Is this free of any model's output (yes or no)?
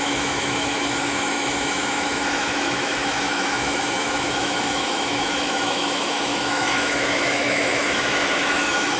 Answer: no